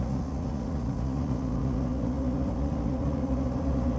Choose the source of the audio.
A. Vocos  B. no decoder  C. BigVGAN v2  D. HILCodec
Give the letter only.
A